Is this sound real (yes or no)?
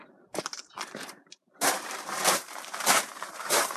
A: no